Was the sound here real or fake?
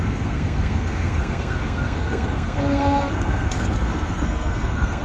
fake